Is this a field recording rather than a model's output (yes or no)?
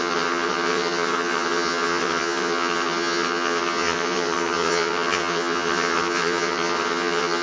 no